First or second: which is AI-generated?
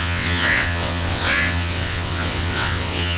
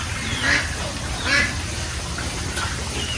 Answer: first